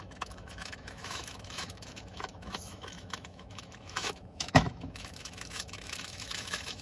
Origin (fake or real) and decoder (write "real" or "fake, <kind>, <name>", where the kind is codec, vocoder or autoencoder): fake, autoencoder, DAC-VAE